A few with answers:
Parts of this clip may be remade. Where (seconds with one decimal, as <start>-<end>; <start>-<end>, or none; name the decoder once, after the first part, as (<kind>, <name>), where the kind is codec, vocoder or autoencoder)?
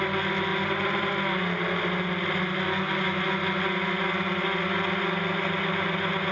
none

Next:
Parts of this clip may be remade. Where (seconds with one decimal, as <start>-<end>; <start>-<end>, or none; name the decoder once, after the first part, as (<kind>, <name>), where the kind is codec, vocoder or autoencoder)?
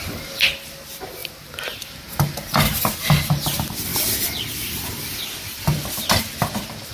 3.9-6.9 (vocoder, BigVGAN v2)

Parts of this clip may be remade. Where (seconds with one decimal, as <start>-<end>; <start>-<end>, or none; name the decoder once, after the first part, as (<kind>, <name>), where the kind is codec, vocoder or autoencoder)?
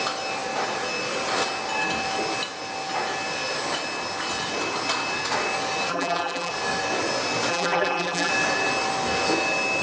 5.9-6.5 (vocoder, BigVGAN v2); 7.5-8.3